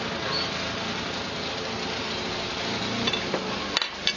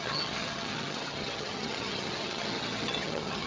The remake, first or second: second